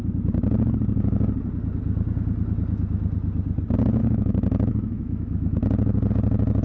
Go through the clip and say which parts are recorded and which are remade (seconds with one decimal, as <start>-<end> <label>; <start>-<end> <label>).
0.0-4.0 recorded; 4.0-6.1 remade; 6.1-6.6 recorded